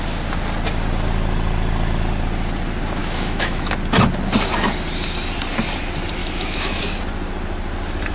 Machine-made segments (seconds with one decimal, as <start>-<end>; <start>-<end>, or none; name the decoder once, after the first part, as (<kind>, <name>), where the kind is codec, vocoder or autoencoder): 3.0-3.7 (autoencoder, DAC-VAE); 6.2-6.8